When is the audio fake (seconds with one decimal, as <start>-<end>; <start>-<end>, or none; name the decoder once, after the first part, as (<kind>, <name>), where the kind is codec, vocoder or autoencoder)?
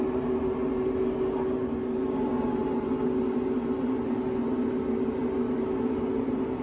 none